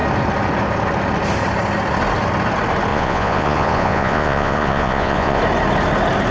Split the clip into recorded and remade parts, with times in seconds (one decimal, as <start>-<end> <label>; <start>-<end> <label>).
0.0-2.9 recorded; 2.9-5.4 remade; 5.4-6.3 recorded